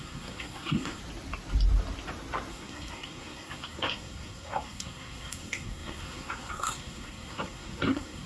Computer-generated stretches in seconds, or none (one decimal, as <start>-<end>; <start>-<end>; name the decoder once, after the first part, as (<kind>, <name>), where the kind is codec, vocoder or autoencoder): 0.0-1.0 (codec, SNAC); 2.5-8.3